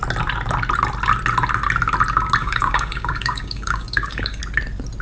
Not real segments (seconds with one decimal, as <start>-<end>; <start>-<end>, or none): 2.4-4.4